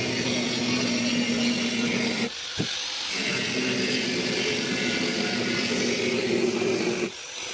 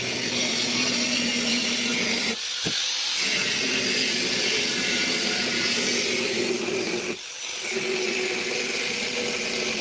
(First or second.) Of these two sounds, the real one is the first